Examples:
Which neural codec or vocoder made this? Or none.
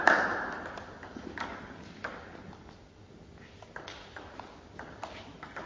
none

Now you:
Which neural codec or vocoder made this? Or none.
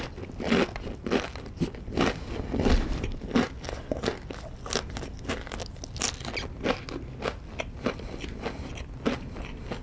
none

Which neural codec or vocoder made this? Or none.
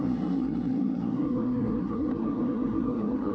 codec, SNAC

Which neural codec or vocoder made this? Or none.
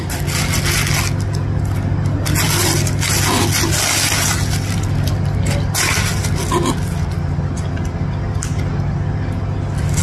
none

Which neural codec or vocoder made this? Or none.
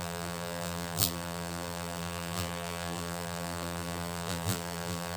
vocoder, BigVGAN v2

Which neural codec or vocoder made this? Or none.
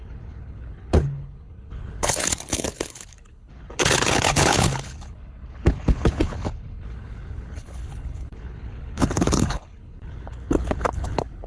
codec, HILCodec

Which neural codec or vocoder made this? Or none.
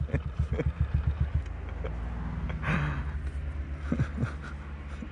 none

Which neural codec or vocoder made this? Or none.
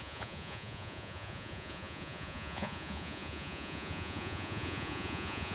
vocoder, Vocos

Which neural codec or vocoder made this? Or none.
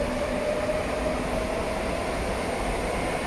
none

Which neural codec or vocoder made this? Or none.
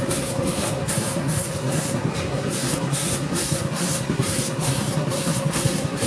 codec, SNAC